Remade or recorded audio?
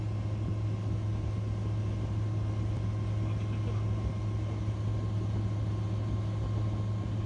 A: recorded